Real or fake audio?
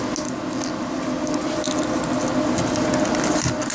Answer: real